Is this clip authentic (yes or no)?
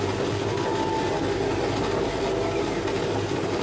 yes